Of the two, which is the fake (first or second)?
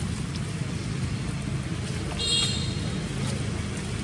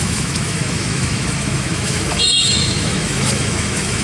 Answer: second